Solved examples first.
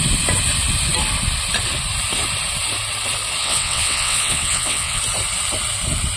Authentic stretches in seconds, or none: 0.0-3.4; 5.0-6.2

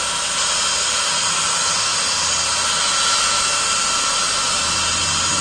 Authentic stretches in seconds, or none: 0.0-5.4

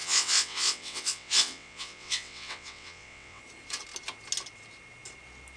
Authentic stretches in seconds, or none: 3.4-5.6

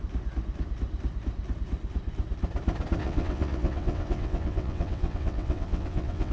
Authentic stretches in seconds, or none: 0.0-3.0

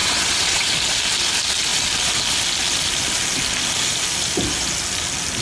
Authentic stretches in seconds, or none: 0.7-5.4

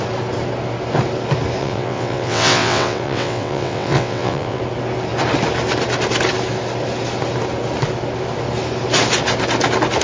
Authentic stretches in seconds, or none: 0.0-1.6; 4.6-10.0

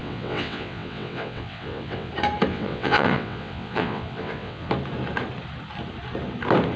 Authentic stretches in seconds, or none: 2.1-2.5; 4.7-6.8

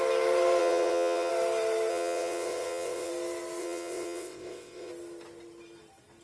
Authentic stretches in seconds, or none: 0.0-0.6; 1.3-1.9; 3.1-3.6; 4.9-6.2